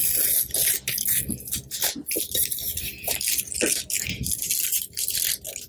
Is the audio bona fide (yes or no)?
yes